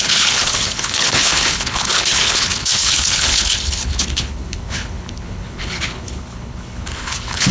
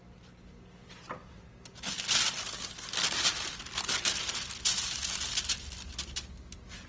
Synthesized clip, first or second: first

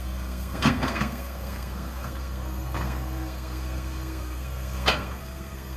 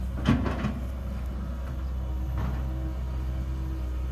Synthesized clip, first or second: first